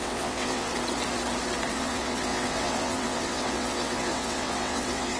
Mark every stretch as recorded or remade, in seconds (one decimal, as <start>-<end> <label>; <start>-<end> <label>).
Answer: 0.0-0.7 remade; 0.7-1.7 recorded; 1.7-5.2 remade